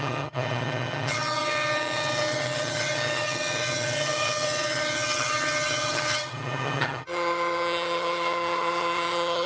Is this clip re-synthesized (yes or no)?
yes